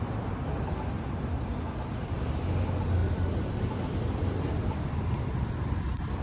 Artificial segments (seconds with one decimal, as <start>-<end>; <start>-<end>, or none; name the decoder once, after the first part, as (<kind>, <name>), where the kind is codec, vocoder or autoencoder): none